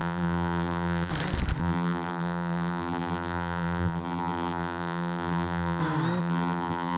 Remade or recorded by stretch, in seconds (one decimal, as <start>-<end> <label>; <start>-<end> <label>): 0.0-1.1 remade; 1.1-1.6 recorded; 1.6-5.8 remade; 5.8-6.2 recorded; 6.2-7.0 remade